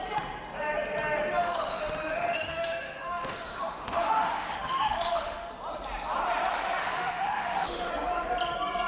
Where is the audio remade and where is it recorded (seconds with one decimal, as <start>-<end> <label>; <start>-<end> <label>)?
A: 0.0-1.4 recorded; 1.4-5.5 remade; 5.5-6.8 recorded; 6.8-7.9 remade; 7.9-8.9 recorded